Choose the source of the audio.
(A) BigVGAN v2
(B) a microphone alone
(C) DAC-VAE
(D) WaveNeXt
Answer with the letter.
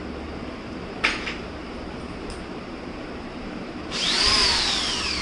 A